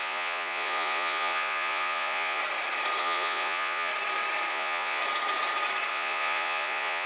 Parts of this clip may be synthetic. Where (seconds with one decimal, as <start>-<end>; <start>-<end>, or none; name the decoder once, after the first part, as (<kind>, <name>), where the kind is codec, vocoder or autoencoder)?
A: 0.0-2.4 (vocoder, Vocos); 3.0-3.9; 4.5-5.0; 5.9-7.1